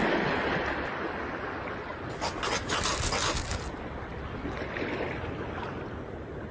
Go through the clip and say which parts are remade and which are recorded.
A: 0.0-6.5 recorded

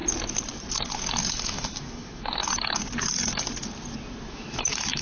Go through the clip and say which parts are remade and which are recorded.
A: 0.0-1.2 recorded; 1.2-2.4 remade; 2.4-4.3 recorded; 4.3-5.0 remade

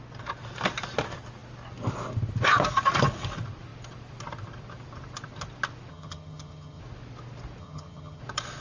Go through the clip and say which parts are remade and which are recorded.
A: 0.0-5.9 recorded; 5.9-6.8 remade; 6.8-7.6 recorded; 7.6-8.2 remade; 8.2-8.6 recorded

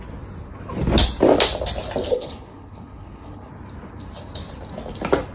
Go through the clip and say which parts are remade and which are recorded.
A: 0.0-2.1 recorded; 2.1-3.5 remade; 3.5-5.3 recorded

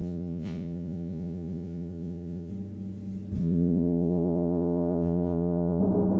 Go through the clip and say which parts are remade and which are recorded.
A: 0.0-2.5 remade; 2.5-3.4 recorded; 3.4-5.8 remade; 5.8-6.2 recorded

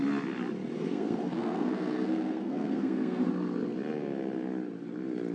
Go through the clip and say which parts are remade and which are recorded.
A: 0.0-0.7 recorded; 0.7-3.3 remade; 3.3-5.3 recorded

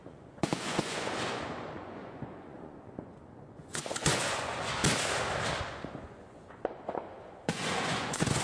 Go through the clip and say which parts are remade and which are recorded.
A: 0.0-4.8 remade; 4.8-5.6 recorded; 5.6-8.4 remade

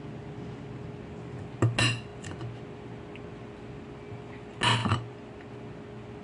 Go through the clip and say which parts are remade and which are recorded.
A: 0.0-6.2 recorded